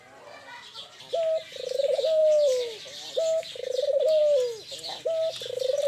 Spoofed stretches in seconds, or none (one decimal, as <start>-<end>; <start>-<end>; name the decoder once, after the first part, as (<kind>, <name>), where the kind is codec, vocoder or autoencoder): none